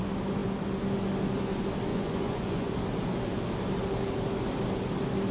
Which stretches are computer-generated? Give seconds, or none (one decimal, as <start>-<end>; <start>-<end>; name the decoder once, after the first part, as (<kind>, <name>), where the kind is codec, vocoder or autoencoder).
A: 1.9-2.7 (vocoder, Vocos)